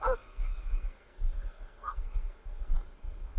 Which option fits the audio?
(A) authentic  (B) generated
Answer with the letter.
B